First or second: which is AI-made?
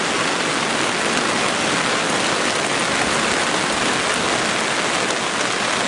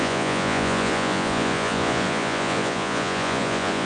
second